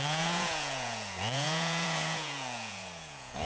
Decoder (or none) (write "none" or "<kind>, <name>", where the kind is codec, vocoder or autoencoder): vocoder, Vocos